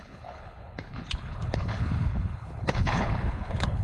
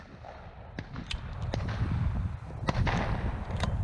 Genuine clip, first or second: second